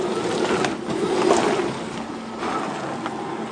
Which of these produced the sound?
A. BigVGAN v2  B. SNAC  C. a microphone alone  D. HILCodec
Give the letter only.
C